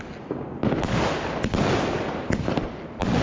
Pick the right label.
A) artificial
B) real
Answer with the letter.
B